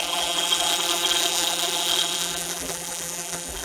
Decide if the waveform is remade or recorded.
remade